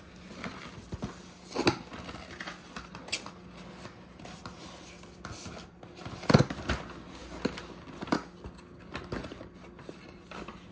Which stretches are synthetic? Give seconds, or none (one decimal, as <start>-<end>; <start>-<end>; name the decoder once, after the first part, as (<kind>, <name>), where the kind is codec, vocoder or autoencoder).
none

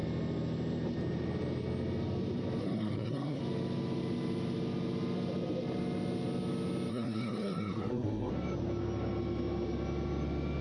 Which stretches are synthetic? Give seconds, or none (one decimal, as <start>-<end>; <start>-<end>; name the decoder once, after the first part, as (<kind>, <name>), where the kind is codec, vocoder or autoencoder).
2.6-3.4 (codec, SNAC); 6.9-8.3

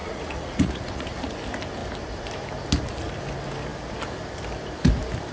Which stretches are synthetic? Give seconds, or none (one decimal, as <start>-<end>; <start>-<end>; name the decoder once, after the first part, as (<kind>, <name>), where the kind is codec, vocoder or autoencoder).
0.0-1.3 (vocoder, Vocos)

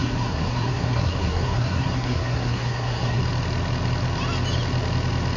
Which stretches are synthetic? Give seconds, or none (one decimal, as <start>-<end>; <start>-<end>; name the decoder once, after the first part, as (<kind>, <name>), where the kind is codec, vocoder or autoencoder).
0.0-3.2 (codec, SNAC)

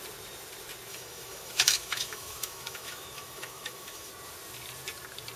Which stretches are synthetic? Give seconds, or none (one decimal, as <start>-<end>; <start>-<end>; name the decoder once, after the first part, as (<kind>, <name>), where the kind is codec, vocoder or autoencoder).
0.9-4.1 (autoencoder, DAC-VAE)